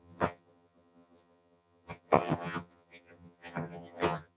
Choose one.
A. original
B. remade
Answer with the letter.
B